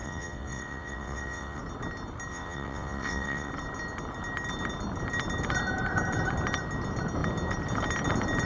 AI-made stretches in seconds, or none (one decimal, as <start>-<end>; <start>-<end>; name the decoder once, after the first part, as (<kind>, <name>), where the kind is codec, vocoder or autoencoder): 0.0-1.6 (vocoder, WaveNeXt); 2.3-3.5